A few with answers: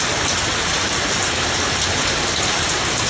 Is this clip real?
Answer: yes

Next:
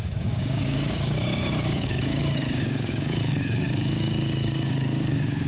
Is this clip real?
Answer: no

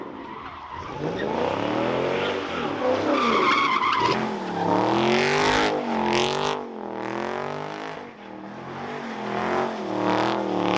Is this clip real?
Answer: yes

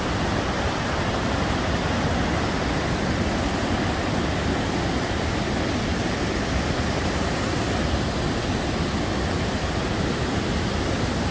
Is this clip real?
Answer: yes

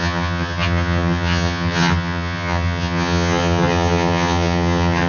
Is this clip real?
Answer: no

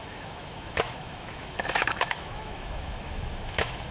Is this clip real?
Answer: no